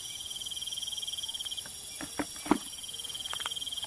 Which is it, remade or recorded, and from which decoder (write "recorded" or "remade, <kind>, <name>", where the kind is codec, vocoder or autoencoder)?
recorded